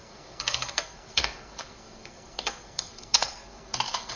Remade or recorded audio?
remade